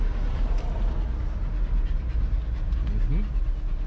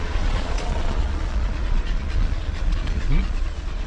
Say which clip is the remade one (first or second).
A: second